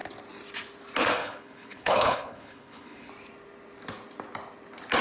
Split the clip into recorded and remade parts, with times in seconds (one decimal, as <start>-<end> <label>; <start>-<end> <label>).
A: 0.0-1.2 recorded; 1.2-3.1 remade; 3.1-5.0 recorded